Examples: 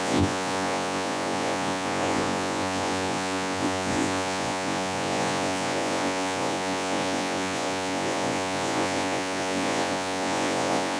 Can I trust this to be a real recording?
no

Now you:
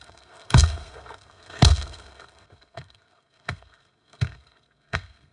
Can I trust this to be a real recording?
no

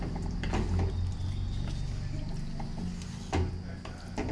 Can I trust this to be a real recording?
yes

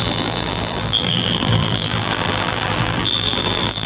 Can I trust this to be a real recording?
no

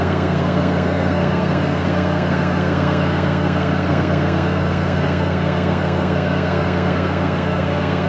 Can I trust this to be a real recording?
no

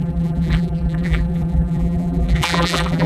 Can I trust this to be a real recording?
no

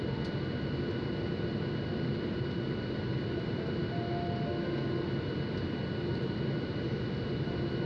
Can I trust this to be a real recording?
yes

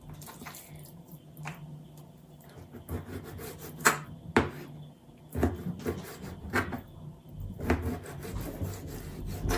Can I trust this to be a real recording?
yes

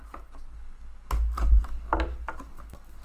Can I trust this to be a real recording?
yes